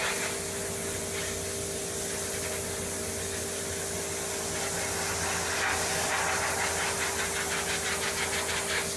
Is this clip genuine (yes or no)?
yes